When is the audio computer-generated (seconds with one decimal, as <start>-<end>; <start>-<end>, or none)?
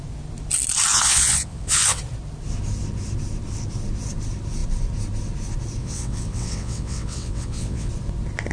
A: 0.9-2.0; 5.8-7.9